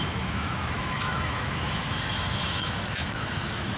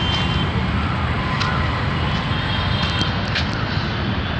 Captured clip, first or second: second